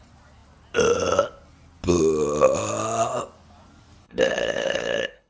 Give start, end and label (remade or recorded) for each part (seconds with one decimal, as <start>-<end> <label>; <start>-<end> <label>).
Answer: 0.0-4.0 recorded; 4.0-5.3 remade